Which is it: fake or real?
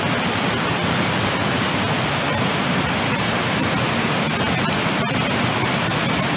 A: real